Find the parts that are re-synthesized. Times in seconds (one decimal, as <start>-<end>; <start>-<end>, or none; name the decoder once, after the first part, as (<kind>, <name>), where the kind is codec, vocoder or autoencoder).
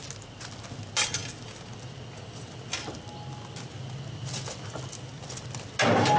none